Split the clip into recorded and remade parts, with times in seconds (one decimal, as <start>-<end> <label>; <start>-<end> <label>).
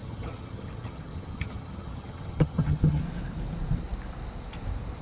0.0-3.0 remade; 3.0-5.0 recorded